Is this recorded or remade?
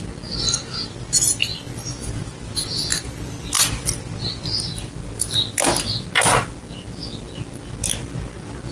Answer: recorded